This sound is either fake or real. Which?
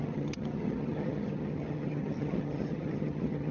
fake